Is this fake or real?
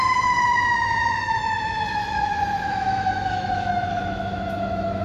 fake